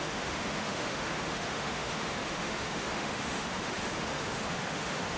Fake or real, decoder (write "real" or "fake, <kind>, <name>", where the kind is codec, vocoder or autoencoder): fake, autoencoder, DAC-VAE